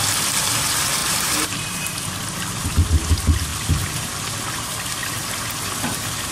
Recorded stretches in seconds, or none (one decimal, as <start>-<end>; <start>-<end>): 0.0-1.0; 1.8-6.3